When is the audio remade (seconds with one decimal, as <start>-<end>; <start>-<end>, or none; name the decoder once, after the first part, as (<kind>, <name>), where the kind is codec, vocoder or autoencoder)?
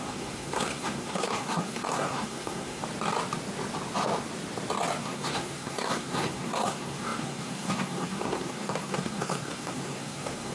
0.0-2.8 (codec, SNAC); 5.0-10.5